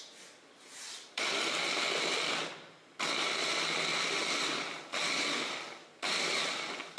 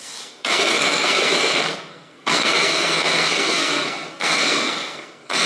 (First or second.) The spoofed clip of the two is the second